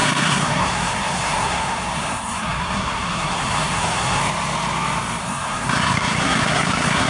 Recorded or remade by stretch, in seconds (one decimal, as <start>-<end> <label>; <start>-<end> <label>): 0.0-4.2 remade; 4.2-5.2 recorded; 5.2-7.1 remade